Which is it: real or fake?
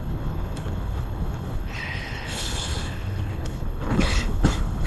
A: fake